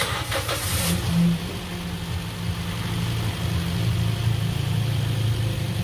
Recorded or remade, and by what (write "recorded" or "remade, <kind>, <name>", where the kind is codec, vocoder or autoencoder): recorded